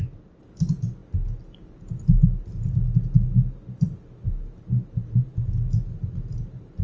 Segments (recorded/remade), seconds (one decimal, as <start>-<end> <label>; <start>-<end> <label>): 0.0-6.8 recorded